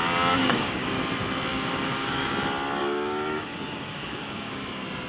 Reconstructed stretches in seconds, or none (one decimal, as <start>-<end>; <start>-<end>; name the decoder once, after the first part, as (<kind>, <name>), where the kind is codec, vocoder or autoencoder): 0.4-1.0 (codec, DAC); 1.5-2.3; 2.8-4.6